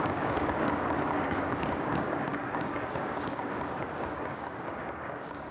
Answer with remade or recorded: remade